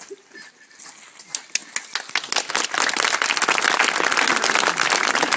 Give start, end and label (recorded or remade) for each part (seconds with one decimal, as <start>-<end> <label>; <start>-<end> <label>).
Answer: 0.0-5.4 recorded

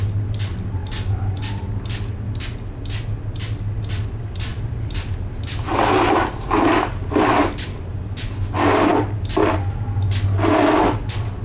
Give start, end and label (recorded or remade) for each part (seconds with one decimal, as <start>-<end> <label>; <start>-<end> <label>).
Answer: 0.0-11.4 recorded

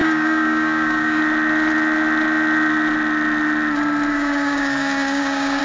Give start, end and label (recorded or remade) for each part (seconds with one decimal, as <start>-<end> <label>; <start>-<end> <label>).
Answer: 0.0-1.2 remade; 1.2-4.1 recorded; 4.1-5.6 remade

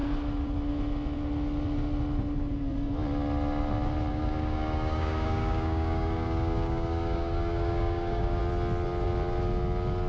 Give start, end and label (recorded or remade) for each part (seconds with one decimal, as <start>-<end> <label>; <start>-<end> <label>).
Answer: 0.0-4.1 recorded; 4.1-8.4 remade; 8.4-10.1 recorded

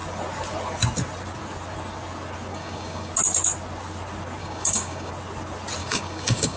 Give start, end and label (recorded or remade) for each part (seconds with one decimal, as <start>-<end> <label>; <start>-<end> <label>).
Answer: 0.0-2.5 recorded; 2.5-3.1 remade; 3.1-4.4 recorded; 4.4-5.1 remade; 5.1-5.8 recorded; 5.8-6.6 remade